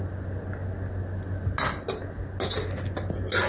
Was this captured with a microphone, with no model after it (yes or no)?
yes